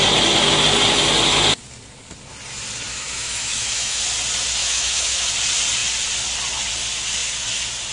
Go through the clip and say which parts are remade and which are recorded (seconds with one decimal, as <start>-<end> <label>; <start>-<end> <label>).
0.0-2.9 recorded; 2.9-4.0 remade; 4.0-4.6 recorded; 4.6-5.3 remade; 5.3-7.9 recorded